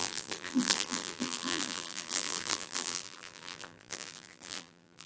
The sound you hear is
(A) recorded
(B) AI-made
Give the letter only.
B